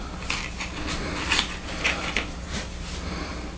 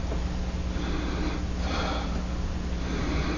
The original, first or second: second